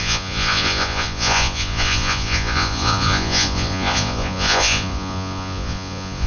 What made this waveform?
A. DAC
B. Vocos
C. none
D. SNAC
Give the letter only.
B